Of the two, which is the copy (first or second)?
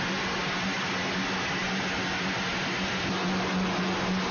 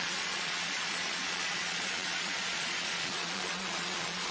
second